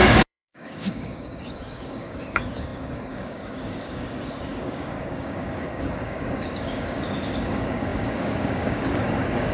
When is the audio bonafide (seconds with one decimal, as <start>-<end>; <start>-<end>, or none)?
none